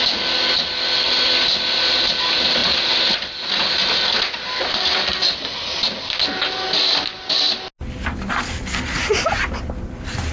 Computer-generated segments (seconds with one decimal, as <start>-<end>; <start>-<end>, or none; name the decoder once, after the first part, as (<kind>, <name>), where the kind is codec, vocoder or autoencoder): none